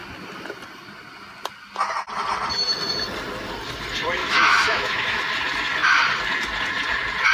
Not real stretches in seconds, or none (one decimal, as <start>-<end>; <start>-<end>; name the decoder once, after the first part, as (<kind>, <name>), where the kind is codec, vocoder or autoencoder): 4.2-5.2 (autoencoder, DAC-VAE)